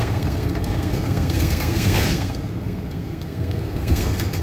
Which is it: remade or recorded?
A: remade